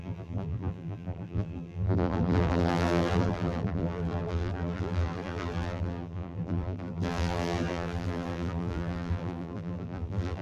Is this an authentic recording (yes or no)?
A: no